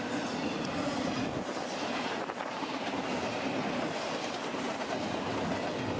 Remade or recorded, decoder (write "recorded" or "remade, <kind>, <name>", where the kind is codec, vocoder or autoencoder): recorded